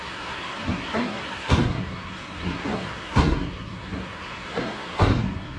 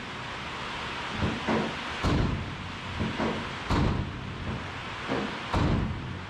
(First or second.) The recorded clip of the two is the second